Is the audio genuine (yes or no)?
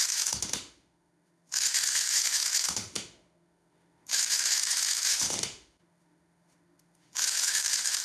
no